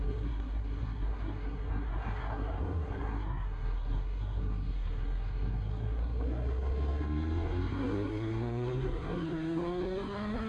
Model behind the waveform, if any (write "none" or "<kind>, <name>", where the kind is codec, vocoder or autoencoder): codec, SNAC